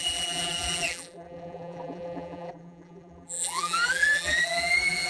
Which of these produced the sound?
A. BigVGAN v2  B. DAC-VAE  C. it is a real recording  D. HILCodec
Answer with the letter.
A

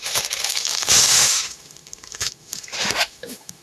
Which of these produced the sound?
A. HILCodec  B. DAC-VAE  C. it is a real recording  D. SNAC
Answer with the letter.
B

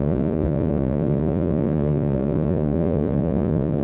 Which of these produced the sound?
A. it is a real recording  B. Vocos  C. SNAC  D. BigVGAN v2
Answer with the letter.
B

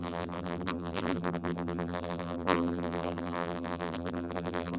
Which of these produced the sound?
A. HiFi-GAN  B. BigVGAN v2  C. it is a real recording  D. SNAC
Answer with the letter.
B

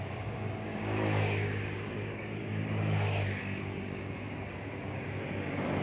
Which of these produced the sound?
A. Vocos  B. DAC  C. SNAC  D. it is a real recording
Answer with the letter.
B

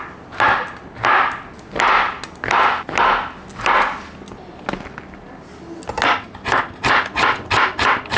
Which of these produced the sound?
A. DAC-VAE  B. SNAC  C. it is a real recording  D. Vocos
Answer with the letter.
C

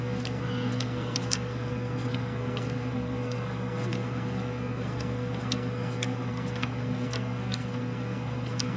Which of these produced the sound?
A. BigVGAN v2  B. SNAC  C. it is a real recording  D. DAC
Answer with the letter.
B